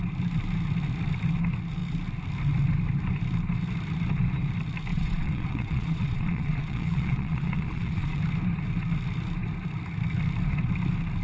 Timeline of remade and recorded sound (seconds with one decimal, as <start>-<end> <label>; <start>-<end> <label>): 0.0-4.9 recorded; 4.9-8.2 remade; 8.2-11.2 recorded